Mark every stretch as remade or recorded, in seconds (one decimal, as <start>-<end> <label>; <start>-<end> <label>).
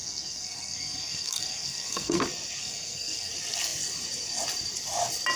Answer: 0.0-2.2 remade; 2.2-2.6 recorded; 2.6-3.3 remade; 3.3-5.4 recorded